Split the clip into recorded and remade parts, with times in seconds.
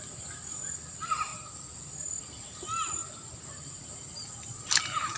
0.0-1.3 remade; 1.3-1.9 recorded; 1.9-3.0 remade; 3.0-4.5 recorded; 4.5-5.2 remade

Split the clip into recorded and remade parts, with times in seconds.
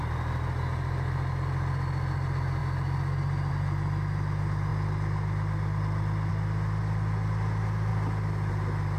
0.0-9.0 recorded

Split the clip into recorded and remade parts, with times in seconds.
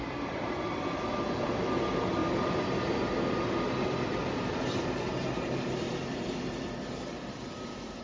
0.0-8.0 recorded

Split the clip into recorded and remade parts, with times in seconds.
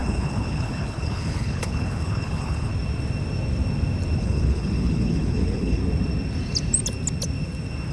0.0-2.7 remade; 2.7-4.2 recorded; 4.2-5.8 remade; 5.8-7.9 recorded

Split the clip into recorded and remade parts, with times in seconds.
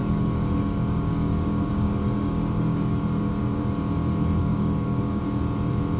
0.0-3.6 remade; 3.6-4.4 recorded; 4.4-5.2 remade; 5.2-6.0 recorded